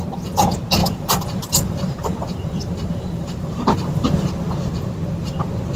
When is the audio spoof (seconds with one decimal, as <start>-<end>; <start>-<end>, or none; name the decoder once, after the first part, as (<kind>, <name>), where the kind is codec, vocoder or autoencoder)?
0.8-4.3 (vocoder, BigVGAN v2)